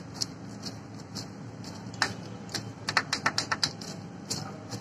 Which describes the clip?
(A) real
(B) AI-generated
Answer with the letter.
A